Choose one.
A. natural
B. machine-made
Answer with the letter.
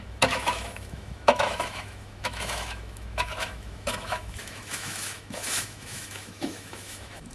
B